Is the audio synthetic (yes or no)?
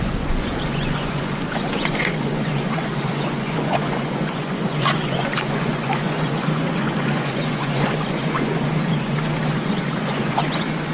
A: yes